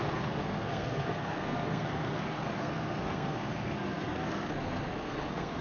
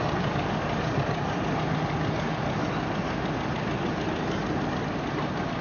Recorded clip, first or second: second